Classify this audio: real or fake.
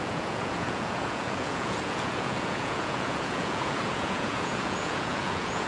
fake